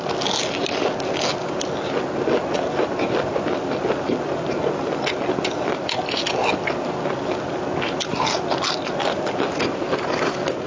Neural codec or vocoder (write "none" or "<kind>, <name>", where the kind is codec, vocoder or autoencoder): none